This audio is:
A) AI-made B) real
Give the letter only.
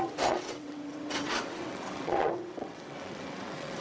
A